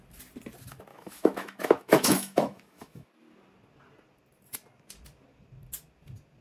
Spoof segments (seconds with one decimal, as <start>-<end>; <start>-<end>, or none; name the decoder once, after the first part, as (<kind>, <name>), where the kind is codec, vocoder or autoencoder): 0.9-3.1 (autoencoder, DAC-VAE)